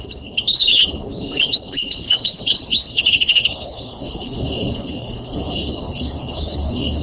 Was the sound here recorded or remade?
remade